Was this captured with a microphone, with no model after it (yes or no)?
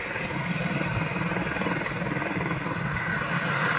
yes